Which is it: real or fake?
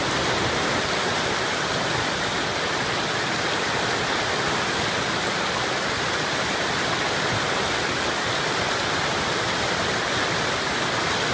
real